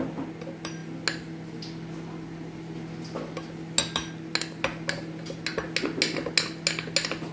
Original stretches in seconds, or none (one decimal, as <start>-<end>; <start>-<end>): 0.0-7.3